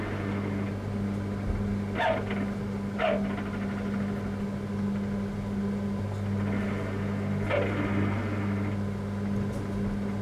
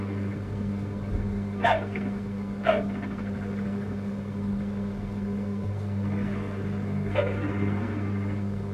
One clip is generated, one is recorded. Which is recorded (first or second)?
first